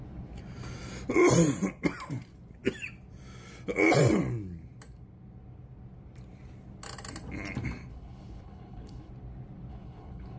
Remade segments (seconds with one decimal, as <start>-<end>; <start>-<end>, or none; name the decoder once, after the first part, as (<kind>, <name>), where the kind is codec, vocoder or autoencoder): 7.9-9.1 (codec, HILCodec); 9.7-10.4